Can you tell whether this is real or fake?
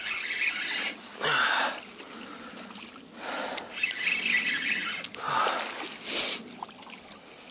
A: real